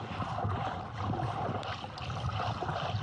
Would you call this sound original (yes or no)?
yes